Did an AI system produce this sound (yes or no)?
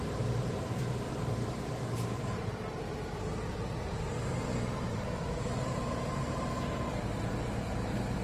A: yes